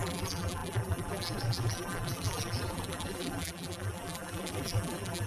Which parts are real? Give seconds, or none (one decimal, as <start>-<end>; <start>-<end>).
none